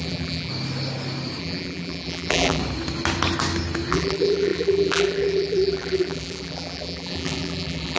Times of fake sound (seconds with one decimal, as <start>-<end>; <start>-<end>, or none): 0.0-0.5; 1.4-2.6; 3.9-8.0